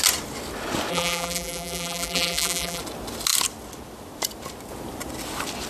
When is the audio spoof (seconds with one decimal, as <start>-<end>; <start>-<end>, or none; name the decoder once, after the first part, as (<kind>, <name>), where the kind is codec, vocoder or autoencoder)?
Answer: 0.9-2.8 (vocoder, BigVGAN v2)